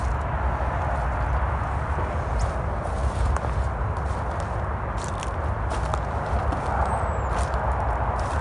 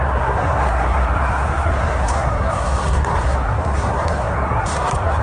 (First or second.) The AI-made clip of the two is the second